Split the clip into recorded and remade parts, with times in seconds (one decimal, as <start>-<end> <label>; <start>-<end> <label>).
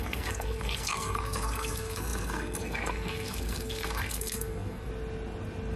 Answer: 0.0-4.9 remade; 4.9-5.8 recorded